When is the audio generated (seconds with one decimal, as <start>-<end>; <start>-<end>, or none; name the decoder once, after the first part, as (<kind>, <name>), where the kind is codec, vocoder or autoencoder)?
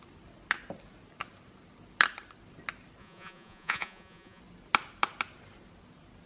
3.0-4.4 (vocoder, Vocos)